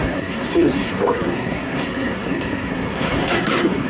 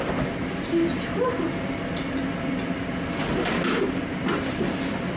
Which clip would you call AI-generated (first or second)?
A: first